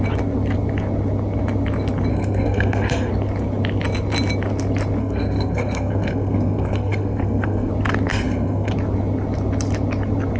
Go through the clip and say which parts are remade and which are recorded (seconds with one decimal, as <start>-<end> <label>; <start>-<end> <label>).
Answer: 0.0-2.1 recorded; 2.1-3.1 remade; 3.1-5.0 recorded; 5.0-7.7 remade; 7.7-8.1 recorded; 8.1-8.7 remade; 8.7-10.4 recorded

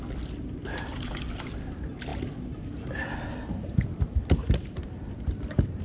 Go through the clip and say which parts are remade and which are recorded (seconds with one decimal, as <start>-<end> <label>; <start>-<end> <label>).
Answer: 0.0-5.8 recorded